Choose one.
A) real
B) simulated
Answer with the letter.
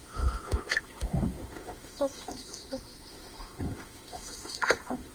B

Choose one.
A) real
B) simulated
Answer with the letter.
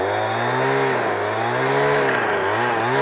A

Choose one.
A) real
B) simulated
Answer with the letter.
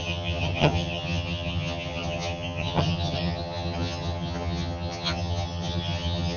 B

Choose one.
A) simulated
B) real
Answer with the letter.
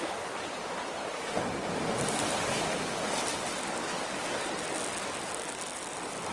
B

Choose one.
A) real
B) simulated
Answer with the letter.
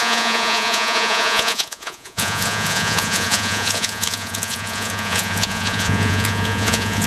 B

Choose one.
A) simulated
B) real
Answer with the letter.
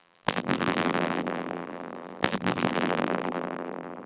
A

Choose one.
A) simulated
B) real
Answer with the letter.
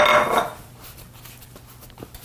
B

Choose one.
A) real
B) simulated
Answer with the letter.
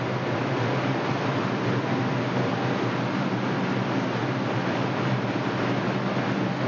A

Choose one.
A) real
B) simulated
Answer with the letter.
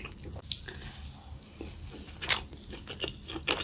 A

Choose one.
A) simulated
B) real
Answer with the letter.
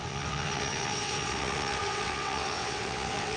A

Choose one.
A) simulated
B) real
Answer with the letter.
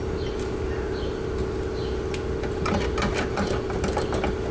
B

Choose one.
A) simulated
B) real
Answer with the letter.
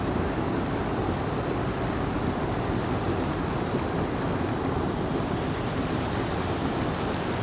B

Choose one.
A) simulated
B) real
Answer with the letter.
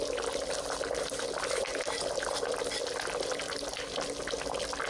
B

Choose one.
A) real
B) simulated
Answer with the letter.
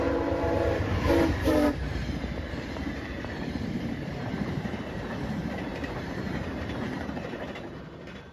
B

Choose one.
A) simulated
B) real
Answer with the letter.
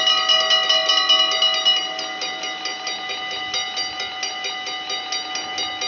B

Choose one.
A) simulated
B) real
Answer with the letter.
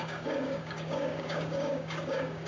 A